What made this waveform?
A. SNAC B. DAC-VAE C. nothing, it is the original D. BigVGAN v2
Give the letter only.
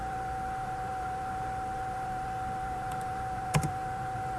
D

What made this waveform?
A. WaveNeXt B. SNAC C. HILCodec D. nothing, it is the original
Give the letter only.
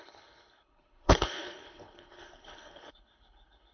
C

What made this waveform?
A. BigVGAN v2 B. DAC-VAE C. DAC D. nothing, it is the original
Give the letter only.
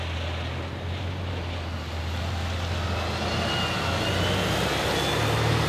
D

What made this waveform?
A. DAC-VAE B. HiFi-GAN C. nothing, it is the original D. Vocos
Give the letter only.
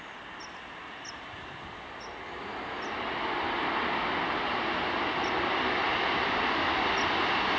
C